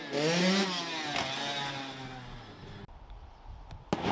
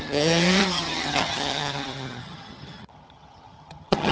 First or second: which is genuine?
first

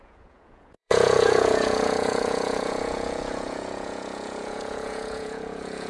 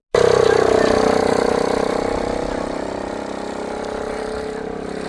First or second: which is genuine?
second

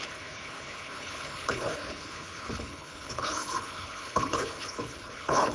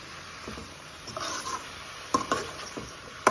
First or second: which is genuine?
second